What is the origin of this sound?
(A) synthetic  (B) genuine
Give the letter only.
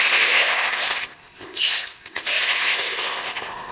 A